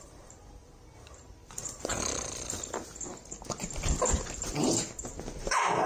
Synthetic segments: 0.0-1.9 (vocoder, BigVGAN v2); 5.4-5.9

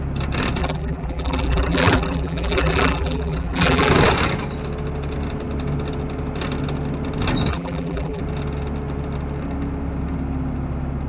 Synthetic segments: 0.6-3.9 (vocoder, BigVGAN v2); 7.5-8.2

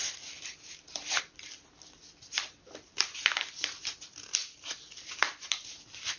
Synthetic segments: 0.0-3.7 (vocoder, BigVGAN v2)

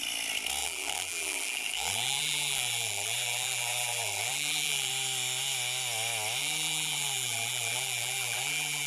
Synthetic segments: 0.6-4.9 (vocoder, BigVGAN v2); 6.4-8.9

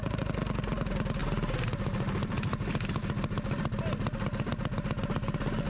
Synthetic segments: none

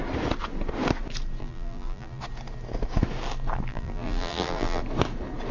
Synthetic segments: 1.4-2.2 (vocoder, BigVGAN v2); 3.7-4.8